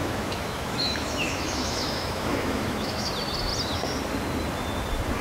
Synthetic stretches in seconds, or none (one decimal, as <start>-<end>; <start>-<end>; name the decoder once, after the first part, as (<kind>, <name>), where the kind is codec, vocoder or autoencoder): 0.0-3.1 (autoencoder, DAC-VAE)